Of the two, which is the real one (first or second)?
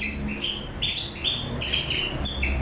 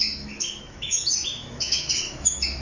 first